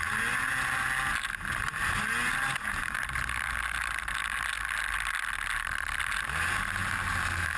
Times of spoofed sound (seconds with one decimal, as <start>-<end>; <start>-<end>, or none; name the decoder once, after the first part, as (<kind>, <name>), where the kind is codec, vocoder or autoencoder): none